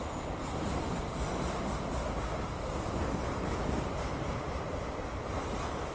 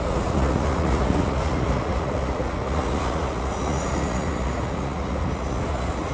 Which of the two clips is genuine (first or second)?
first